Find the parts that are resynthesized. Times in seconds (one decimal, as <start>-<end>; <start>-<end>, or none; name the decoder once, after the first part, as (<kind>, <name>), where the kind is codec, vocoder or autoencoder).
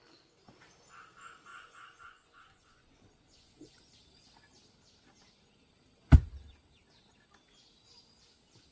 1.5-3.9 (vocoder, Vocos)